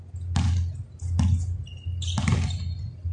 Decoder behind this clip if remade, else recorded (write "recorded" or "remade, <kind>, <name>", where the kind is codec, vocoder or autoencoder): recorded